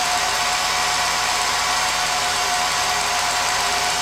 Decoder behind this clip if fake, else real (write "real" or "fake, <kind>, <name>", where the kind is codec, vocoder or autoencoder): fake, vocoder, BigVGAN v2